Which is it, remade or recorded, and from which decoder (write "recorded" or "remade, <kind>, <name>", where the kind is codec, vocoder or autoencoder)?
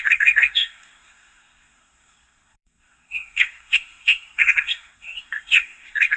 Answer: remade, codec, SNAC